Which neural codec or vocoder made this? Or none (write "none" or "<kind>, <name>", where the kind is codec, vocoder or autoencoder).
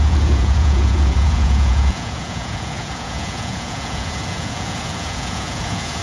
vocoder, Vocos